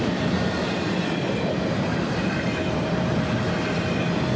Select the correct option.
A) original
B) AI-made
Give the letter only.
B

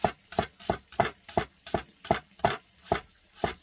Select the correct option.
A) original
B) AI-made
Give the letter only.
A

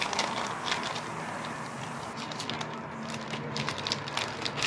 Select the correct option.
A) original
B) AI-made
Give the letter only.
A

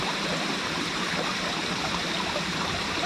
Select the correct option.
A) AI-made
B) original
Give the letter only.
A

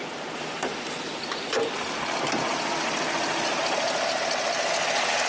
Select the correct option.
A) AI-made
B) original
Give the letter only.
B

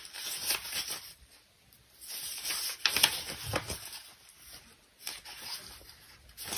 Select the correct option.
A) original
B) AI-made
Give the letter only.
A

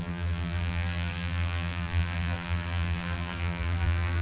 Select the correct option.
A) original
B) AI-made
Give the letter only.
B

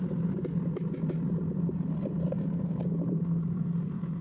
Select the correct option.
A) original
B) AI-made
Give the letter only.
A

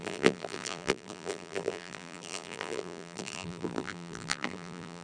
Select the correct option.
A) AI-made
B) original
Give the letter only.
A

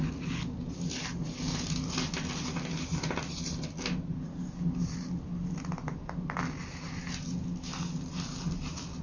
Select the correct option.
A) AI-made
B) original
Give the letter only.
B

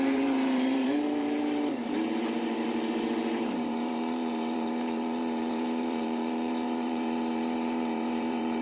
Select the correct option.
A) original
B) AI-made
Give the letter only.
B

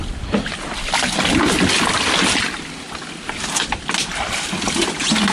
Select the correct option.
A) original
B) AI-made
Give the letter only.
A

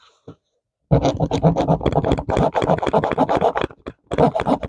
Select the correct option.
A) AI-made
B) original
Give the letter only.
B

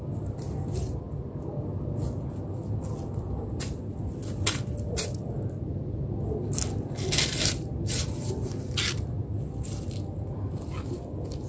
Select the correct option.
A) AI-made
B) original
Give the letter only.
B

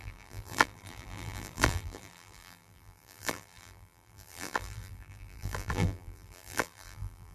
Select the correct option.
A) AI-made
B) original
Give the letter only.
A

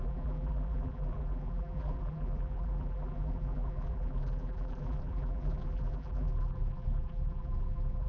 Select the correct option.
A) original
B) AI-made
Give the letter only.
B